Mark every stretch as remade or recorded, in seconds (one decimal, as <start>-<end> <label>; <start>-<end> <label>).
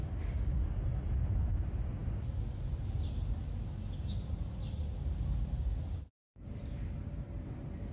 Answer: 0.0-7.9 recorded